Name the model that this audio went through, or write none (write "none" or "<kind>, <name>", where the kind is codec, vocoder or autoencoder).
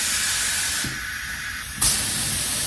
none